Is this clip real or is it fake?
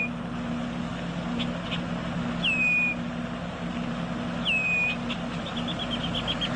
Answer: real